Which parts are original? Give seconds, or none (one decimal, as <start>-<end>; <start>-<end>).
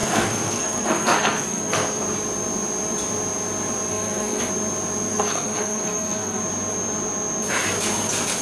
2.0-3.9; 4.5-5.1; 6.4-8.4